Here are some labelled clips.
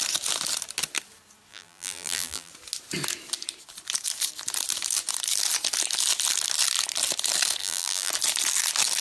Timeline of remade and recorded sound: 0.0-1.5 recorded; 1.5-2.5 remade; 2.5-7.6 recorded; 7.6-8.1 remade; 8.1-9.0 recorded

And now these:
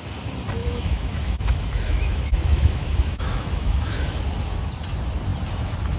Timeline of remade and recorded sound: 0.0-0.6 recorded; 0.6-4.2 remade; 4.2-6.0 recorded

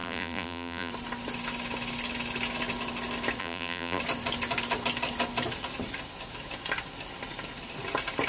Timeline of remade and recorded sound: 0.0-0.9 remade; 0.9-3.4 recorded; 3.4-4.0 remade; 4.0-8.3 recorded

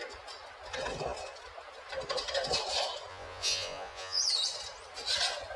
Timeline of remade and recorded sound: 0.0-3.1 recorded; 3.1-4.2 remade; 4.2-5.6 recorded

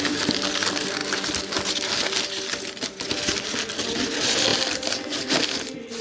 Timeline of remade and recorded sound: 0.0-6.0 recorded

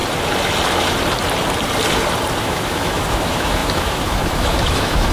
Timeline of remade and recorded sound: 0.0-2.4 recorded; 2.4-5.1 remade